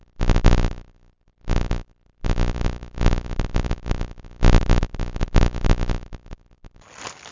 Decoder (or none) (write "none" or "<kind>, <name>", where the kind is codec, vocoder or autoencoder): none